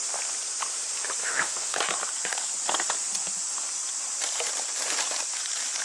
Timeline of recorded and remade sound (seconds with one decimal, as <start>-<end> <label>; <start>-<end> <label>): 0.0-1.2 recorded; 1.2-1.8 remade; 1.8-5.8 recorded